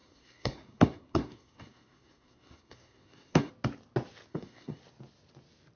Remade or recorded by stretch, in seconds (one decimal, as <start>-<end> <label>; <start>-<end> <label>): 0.0-3.5 remade; 3.5-4.3 recorded; 4.3-4.8 remade; 4.8-5.8 recorded